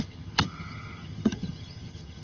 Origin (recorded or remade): remade